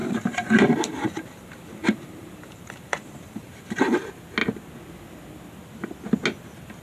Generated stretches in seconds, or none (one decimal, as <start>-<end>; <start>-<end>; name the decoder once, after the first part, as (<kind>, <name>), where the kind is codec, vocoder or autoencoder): 0.0-4.1 (vocoder, BigVGAN v2)